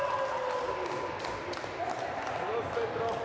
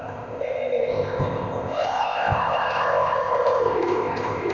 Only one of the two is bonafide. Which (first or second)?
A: first